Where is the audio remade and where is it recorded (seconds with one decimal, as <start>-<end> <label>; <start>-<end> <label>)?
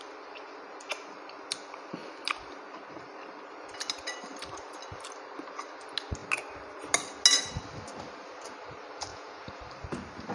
0.0-9.1 recorded; 9.1-9.6 remade; 9.6-10.3 recorded